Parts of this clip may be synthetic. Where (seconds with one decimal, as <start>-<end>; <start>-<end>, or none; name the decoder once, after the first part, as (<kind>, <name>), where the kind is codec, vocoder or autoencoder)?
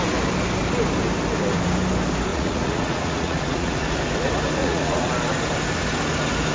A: 2.3-4.0 (vocoder, Vocos); 4.6-5.1